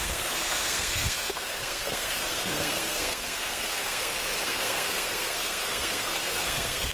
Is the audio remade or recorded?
remade